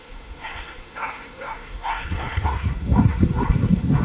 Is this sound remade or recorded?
remade